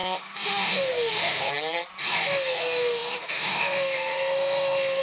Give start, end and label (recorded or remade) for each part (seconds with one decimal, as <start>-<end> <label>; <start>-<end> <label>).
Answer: 0.0-1.5 remade; 1.5-2.0 recorded; 2.0-5.0 remade